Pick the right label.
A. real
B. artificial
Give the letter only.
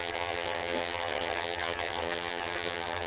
B